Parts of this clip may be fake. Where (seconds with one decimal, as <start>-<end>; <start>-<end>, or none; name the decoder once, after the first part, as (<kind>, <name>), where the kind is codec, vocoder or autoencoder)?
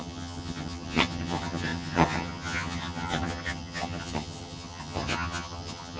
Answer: 0.0-6.0 (vocoder, HiFi-GAN)